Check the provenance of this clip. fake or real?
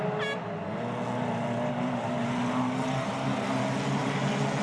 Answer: real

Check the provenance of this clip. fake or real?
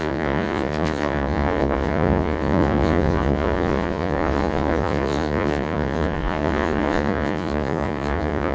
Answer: fake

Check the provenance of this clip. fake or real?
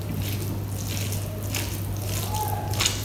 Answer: real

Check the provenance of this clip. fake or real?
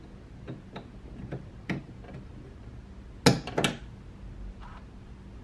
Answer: real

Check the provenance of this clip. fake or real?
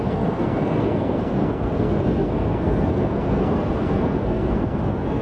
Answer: fake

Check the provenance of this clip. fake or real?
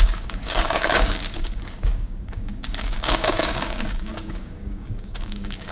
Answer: fake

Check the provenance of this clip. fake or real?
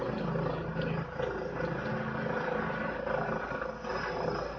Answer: real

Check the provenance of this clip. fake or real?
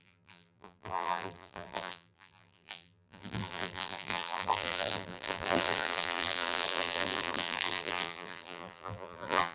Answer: fake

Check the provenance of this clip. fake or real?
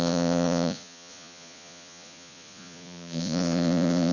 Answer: fake